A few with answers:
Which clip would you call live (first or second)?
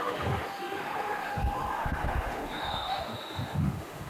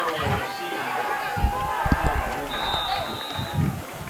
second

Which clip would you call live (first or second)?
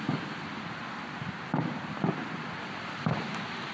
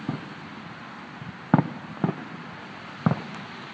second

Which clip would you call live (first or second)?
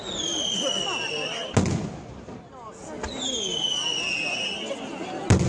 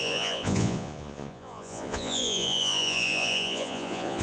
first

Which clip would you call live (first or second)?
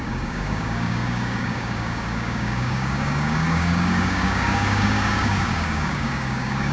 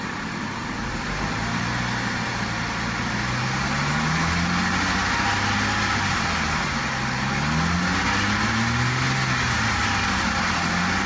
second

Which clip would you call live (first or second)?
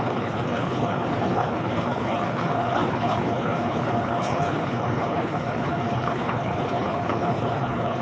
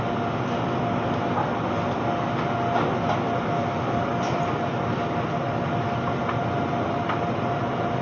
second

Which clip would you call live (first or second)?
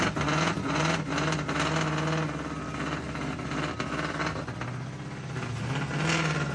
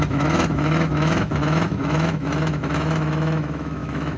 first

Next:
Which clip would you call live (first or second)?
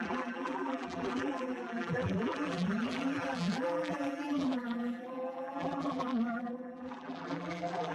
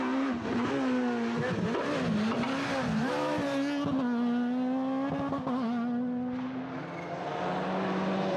second